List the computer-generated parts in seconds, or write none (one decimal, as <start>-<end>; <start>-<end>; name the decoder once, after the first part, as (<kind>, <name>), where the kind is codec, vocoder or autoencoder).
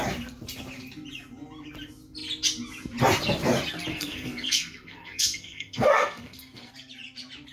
3.9-6.7 (codec, SNAC)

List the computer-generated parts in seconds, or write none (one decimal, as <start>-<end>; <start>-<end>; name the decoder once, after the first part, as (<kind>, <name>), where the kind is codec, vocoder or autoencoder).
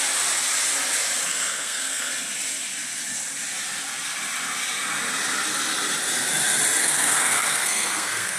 1.3-2.1 (codec, SNAC); 6.8-8.4